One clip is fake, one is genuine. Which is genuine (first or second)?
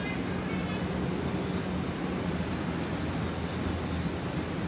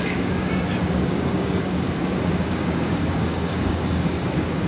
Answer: first